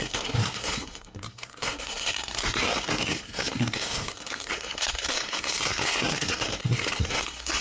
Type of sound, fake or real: fake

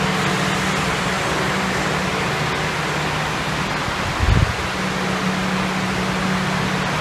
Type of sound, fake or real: real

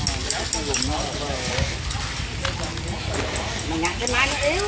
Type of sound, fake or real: real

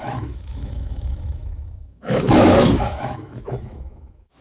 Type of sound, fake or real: fake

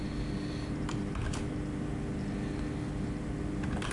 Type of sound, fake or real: real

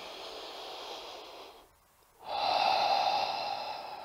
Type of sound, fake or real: real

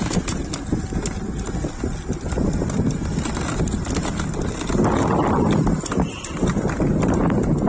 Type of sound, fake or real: real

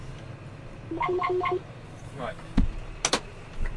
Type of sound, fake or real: real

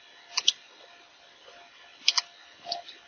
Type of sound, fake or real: real